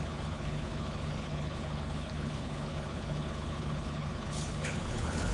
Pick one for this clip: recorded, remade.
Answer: remade